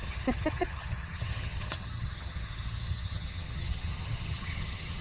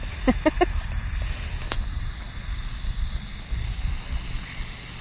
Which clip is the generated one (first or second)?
first